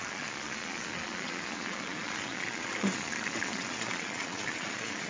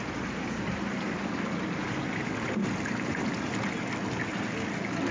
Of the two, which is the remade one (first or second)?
first